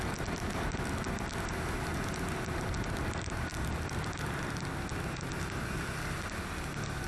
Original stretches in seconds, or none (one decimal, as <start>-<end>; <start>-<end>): 0.0-7.1